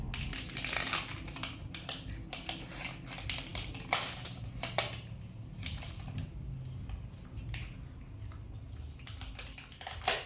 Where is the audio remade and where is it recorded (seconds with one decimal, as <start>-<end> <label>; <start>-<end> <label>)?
0.0-10.3 recorded